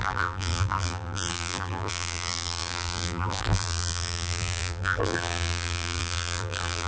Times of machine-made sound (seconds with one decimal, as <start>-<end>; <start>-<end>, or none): 0.0-6.9